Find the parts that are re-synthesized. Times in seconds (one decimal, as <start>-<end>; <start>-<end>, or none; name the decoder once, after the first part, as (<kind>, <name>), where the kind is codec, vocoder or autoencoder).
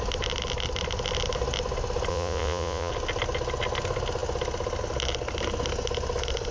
2.1-2.9 (vocoder, Vocos)